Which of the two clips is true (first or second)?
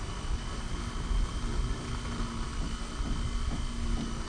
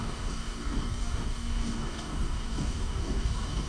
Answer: first